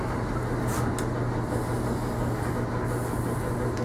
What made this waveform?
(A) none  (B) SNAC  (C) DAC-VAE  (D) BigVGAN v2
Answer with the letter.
A